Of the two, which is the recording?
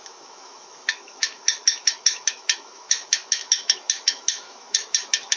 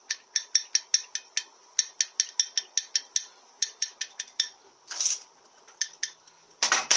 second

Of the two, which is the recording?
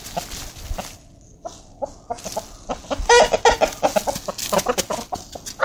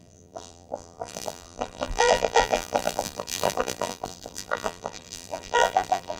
first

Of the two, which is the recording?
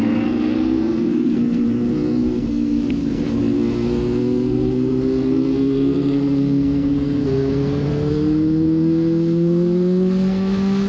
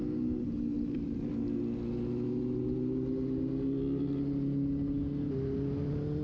second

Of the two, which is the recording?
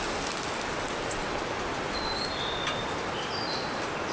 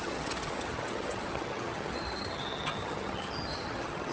first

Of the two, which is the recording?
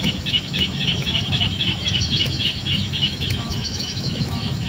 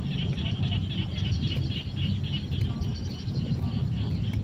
second